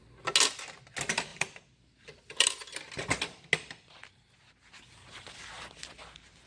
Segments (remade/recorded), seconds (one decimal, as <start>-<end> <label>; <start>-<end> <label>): 0.0-1.3 recorded; 1.3-2.9 remade; 2.9-6.5 recorded